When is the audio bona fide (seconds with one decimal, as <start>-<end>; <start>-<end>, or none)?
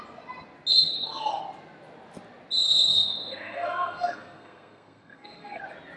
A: 0.0-0.7; 1.4-2.6; 5.6-6.0